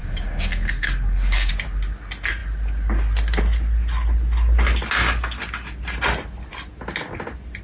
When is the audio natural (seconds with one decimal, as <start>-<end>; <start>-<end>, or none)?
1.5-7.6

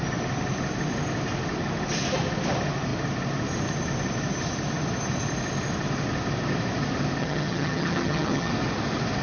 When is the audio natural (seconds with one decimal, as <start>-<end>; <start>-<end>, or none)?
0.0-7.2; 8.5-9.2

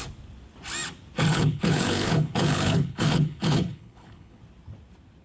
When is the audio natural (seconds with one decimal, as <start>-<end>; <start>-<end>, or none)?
0.0-1.3; 4.4-5.2